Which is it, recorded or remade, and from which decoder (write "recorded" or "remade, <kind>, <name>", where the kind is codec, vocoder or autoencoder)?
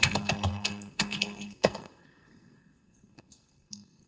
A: remade, codec, SNAC